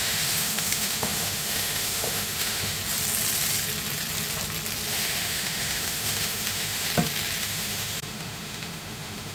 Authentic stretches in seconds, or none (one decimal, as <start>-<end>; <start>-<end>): 2.8-4.9; 6.9-7.4